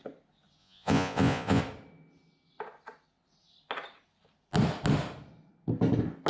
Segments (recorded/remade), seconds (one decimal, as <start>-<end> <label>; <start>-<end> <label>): 0.0-0.6 recorded; 0.6-1.6 remade; 1.6-6.3 recorded